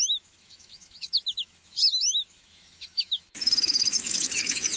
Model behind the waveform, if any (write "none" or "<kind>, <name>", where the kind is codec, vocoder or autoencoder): autoencoder, DAC-VAE